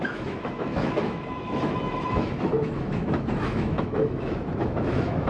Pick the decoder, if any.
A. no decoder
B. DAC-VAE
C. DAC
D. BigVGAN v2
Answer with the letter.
B